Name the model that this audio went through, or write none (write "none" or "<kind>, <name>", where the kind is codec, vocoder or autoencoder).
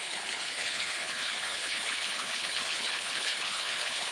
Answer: codec, HILCodec